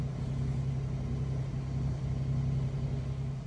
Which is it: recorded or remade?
recorded